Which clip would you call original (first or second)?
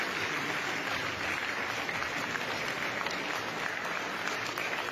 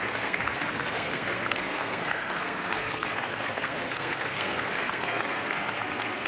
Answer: first